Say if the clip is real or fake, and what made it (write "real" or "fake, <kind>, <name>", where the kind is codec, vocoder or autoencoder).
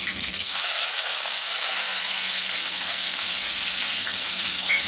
fake, codec, SNAC